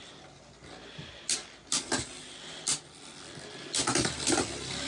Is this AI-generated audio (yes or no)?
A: no